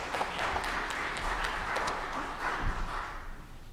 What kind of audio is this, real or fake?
real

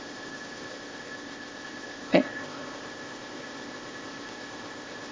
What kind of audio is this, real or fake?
fake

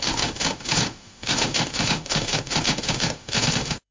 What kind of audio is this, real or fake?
fake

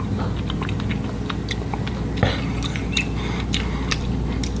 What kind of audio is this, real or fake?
real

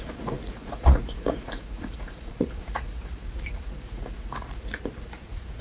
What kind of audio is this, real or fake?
fake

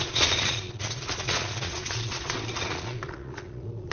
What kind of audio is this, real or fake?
fake